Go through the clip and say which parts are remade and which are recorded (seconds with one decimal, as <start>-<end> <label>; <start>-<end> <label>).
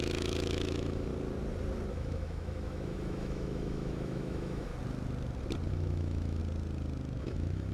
0.0-1.1 remade; 1.1-1.9 recorded; 1.9-4.7 remade; 4.7-5.7 recorded; 5.7-6.4 remade; 6.4-7.2 recorded; 7.2-7.7 remade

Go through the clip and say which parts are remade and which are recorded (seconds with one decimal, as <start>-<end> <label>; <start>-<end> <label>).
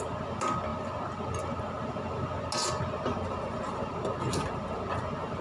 0.0-5.4 recorded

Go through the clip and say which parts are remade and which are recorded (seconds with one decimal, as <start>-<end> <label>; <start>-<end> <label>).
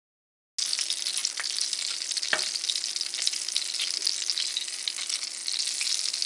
0.0-6.3 recorded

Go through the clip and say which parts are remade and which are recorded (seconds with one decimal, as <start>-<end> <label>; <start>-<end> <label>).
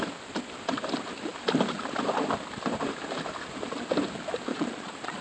0.0-4.5 recorded; 4.5-5.2 remade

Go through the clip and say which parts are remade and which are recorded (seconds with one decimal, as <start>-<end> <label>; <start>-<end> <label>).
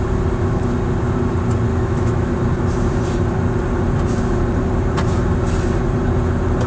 0.0-1.7 recorded; 1.7-2.3 remade; 2.3-6.7 recorded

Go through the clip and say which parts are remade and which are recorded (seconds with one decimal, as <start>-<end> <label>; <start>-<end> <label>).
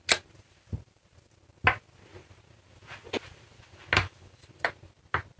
0.0-5.4 recorded